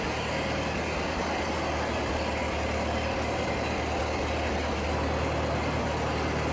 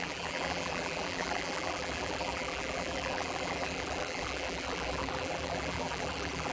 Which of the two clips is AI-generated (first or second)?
second